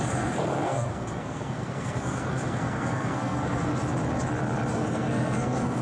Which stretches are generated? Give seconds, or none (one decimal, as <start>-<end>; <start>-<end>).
0.0-3.7; 4.7-5.8